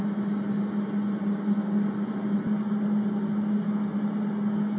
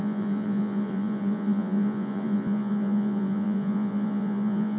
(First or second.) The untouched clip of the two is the first